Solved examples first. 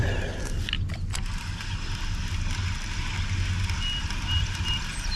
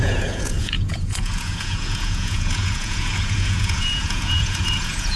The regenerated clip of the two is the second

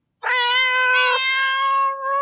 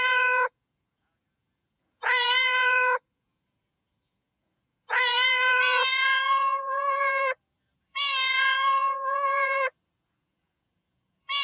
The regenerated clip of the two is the second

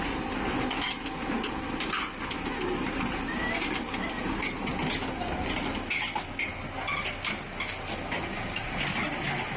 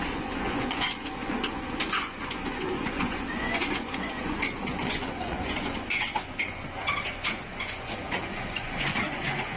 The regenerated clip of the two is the second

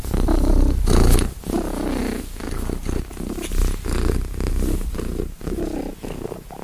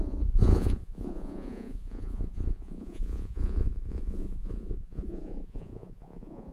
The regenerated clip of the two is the second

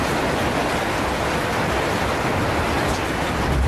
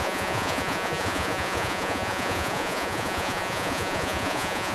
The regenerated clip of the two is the second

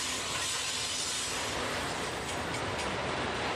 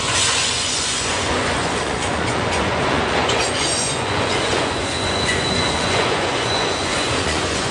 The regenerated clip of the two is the second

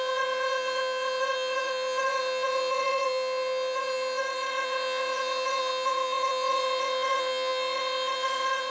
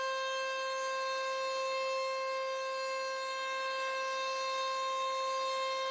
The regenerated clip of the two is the first